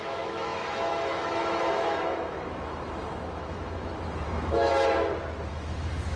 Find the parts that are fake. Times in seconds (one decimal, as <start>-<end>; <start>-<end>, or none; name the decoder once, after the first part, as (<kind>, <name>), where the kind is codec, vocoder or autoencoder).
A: 0.0-4.7 (autoencoder, DAC-VAE); 5.5-6.2